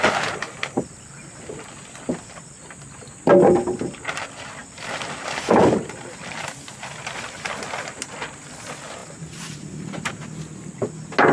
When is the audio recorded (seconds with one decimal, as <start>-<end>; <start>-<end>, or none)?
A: 0.0-9.0; 10.1-11.3